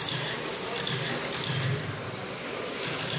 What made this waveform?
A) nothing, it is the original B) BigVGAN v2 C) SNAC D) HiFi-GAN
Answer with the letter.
A